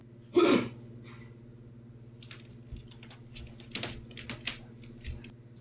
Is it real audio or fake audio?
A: real